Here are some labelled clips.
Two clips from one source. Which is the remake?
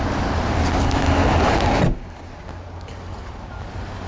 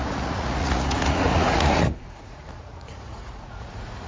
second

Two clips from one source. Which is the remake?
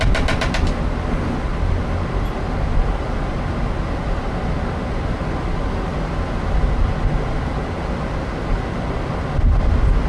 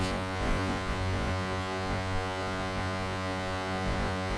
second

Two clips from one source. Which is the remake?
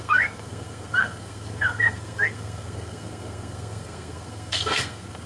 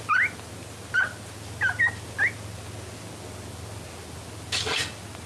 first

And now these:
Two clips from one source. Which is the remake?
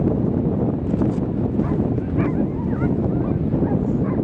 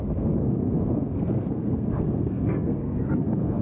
second